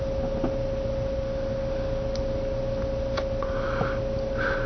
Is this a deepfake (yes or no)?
no